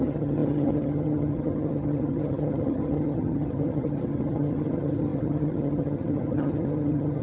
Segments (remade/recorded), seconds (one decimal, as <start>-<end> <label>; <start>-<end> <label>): 0.0-7.2 remade